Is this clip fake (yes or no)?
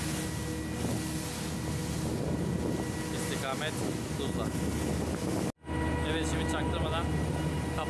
no